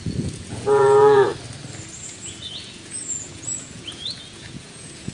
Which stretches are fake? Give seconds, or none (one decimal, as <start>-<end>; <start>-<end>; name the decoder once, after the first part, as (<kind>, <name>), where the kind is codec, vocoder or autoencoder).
0.0-1.3 (vocoder, Vocos); 2.0-5.1